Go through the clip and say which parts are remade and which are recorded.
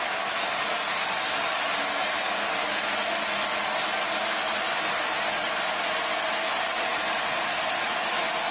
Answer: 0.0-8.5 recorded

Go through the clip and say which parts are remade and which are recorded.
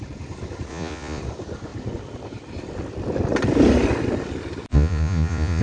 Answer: 0.0-0.7 recorded; 0.7-1.2 remade; 1.2-4.7 recorded; 4.7-5.6 remade